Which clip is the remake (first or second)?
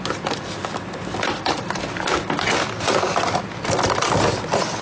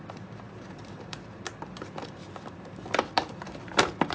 second